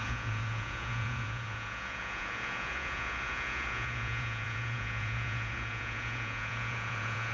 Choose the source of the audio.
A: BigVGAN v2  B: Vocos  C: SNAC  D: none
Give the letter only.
B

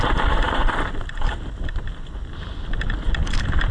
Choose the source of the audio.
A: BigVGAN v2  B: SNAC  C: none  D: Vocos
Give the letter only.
C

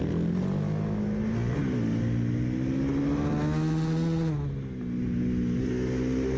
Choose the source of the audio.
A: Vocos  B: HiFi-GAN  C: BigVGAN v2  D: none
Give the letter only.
D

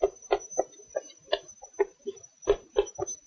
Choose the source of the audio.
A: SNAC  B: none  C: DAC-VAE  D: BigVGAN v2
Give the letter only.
B